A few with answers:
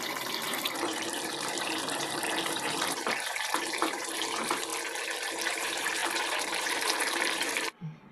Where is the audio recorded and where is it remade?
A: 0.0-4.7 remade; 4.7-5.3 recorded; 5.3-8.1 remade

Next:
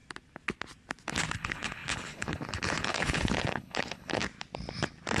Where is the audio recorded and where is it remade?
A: 0.0-1.3 recorded; 1.3-4.2 remade; 4.2-5.2 recorded

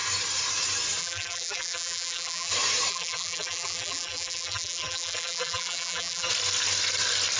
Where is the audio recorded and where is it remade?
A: 0.0-1.0 recorded; 1.0-2.5 remade; 2.5-2.9 recorded; 2.9-6.3 remade; 6.3-7.4 recorded

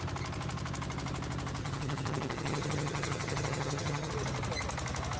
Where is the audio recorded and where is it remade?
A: 0.0-1.6 recorded; 1.6-4.1 remade; 4.1-5.2 recorded